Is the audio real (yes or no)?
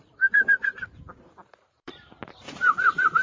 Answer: no